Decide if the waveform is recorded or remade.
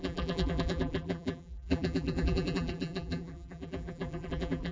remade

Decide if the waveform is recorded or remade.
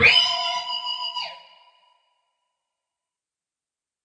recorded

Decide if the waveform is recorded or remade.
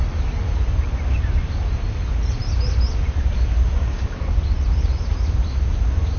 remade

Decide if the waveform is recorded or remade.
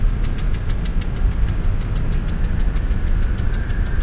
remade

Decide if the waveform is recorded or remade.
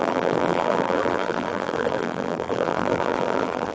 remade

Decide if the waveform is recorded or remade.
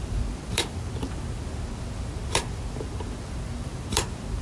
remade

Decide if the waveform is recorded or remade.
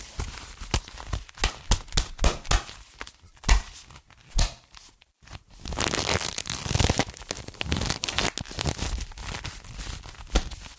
recorded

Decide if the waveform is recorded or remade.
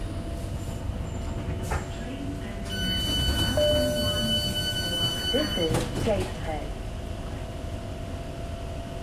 recorded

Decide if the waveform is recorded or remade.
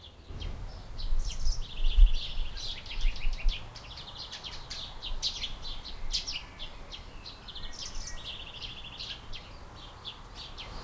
recorded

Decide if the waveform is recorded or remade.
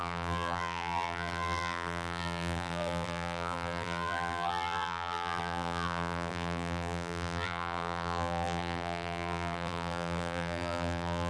remade